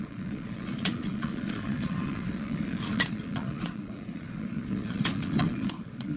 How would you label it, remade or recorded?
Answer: remade